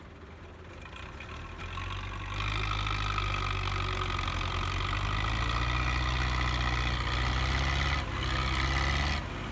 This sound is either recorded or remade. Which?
recorded